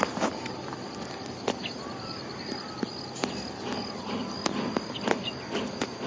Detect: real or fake real